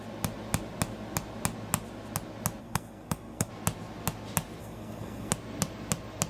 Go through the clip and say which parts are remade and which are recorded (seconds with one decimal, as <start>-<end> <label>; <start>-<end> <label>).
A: 0.0-2.6 recorded; 2.6-3.5 remade; 3.5-4.6 recorded; 4.6-5.3 remade; 5.3-6.3 recorded